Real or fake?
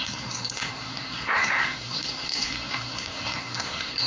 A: fake